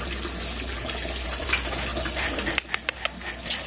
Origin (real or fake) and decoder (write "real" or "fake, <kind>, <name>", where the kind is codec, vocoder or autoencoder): real